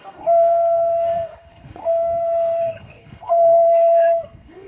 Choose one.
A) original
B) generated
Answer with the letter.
B